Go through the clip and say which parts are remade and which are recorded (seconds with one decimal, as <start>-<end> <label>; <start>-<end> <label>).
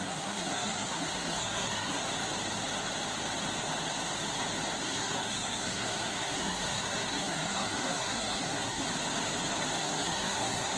0.0-2.0 remade; 2.0-4.8 recorded; 4.8-8.8 remade; 8.8-9.8 recorded; 9.8-10.8 remade